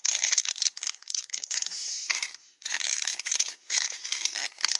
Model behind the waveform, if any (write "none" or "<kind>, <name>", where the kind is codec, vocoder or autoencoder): codec, SNAC